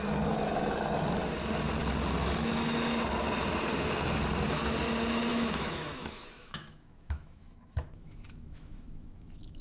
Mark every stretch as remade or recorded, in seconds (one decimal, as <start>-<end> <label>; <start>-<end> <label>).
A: 0.0-5.3 recorded; 5.3-9.6 remade